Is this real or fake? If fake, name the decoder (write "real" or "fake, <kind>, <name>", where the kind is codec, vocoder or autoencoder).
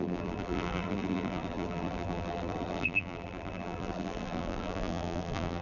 fake, vocoder, BigVGAN v2